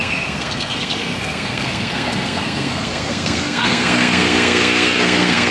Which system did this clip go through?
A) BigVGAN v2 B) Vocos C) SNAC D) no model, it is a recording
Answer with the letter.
C